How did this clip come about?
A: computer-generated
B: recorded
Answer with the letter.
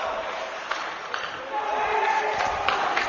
B